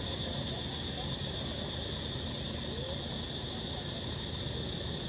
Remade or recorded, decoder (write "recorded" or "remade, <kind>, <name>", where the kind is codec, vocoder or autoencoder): recorded